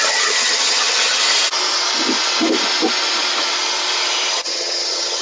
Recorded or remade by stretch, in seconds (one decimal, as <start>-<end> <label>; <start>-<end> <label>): 0.0-1.2 remade; 1.2-4.3 recorded; 4.3-5.2 remade